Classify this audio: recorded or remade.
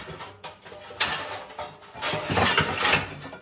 recorded